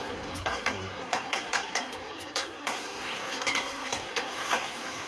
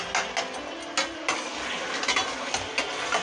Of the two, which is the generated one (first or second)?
first